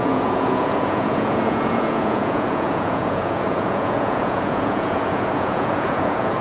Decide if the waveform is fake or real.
fake